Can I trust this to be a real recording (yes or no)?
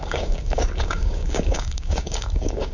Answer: no